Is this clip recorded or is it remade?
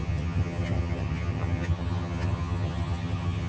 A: remade